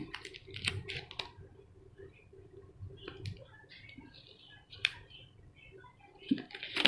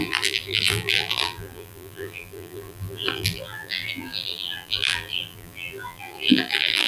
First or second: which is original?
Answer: first